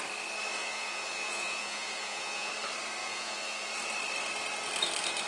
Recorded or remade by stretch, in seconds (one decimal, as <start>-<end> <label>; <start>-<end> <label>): 0.0-0.6 recorded; 0.6-2.5 remade; 2.5-3.0 recorded; 3.0-3.7 remade; 3.7-5.3 recorded